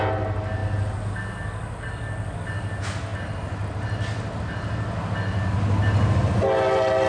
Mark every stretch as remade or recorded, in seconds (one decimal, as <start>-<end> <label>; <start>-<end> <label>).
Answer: 0.0-7.1 recorded